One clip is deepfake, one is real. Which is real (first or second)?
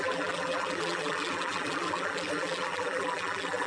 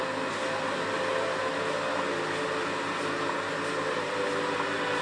second